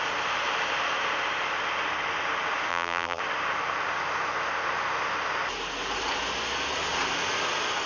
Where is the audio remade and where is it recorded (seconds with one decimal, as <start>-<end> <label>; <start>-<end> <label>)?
0.0-2.7 recorded; 2.7-3.2 remade; 3.2-7.9 recorded

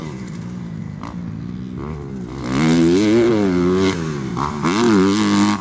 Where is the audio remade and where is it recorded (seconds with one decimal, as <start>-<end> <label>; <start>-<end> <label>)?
0.0-0.8 remade; 0.8-5.6 recorded